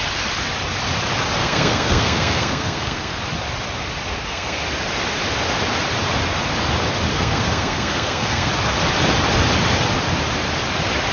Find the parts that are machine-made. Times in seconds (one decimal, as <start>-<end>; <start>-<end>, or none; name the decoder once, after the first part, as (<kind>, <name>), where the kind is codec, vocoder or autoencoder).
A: 1.4-3.2 (codec, SNAC); 4.1-4.6; 7.1-8.5